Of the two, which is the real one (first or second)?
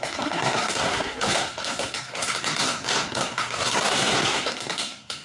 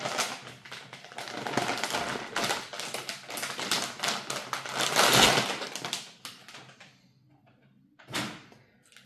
second